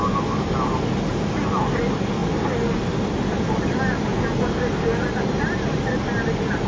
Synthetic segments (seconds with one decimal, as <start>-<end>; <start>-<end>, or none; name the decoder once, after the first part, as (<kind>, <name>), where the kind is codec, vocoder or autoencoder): none